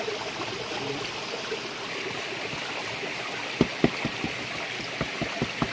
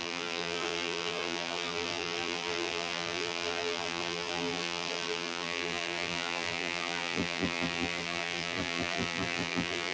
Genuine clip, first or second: first